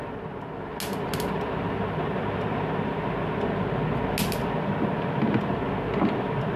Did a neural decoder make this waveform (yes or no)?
no